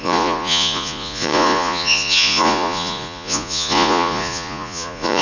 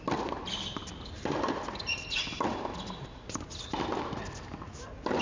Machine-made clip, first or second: first